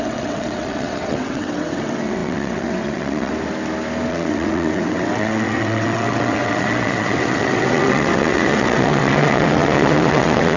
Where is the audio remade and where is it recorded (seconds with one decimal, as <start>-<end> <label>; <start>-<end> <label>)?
0.0-3.3 remade; 3.3-4.1 recorded; 4.1-10.6 remade